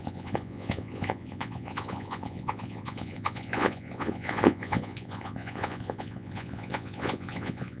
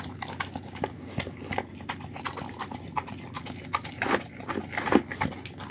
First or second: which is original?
second